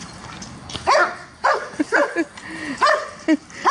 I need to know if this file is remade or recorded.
recorded